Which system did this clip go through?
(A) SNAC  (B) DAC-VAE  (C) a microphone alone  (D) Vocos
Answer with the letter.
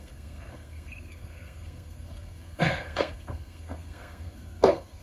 A